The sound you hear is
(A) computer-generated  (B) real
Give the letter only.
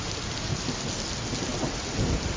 B